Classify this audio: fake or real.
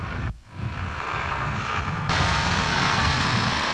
fake